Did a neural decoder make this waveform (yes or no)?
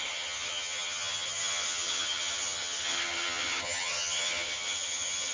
yes